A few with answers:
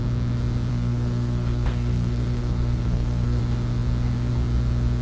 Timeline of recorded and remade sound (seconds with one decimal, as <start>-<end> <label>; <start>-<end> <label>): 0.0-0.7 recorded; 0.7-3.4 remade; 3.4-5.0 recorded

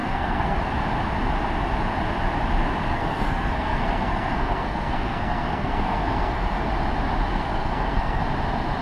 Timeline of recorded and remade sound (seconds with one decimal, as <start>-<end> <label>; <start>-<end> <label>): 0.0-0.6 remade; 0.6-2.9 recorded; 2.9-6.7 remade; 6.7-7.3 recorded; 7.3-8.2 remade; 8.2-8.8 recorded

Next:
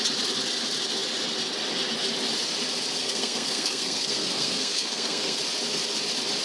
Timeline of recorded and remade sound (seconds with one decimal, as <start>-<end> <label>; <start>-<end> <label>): 0.0-3.0 recorded; 3.0-5.4 remade; 5.4-6.4 recorded

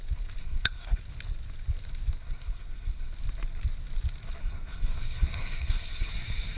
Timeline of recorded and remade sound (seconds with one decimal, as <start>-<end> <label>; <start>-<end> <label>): 0.0-0.4 recorded; 0.4-1.0 remade; 1.0-2.2 recorded; 2.2-3.1 remade; 3.1-4.4 recorded; 4.4-6.1 remade; 6.1-6.6 recorded

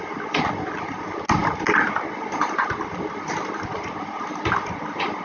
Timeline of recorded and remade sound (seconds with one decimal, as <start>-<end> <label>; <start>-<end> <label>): 0.0-5.2 recorded

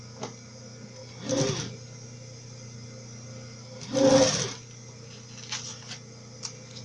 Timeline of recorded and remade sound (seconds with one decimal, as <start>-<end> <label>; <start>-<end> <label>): 0.0-6.8 recorded

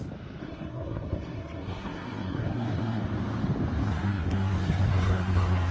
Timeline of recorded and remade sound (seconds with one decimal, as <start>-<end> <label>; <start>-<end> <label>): 0.0-0.4 recorded; 0.4-3.0 remade; 3.0-3.8 recorded; 3.8-5.7 remade